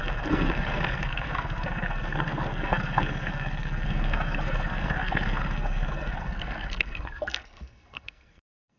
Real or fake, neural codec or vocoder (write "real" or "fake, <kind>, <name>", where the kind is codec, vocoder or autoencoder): fake, codec, SNAC